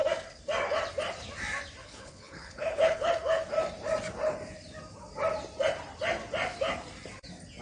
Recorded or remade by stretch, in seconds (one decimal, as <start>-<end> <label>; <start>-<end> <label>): 0.0-1.8 recorded; 1.8-3.1 remade; 3.1-7.6 recorded